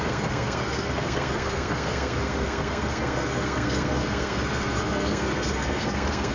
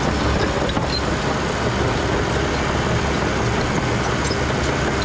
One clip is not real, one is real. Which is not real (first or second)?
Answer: first